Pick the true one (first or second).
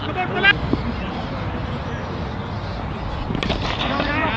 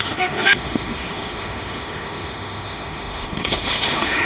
first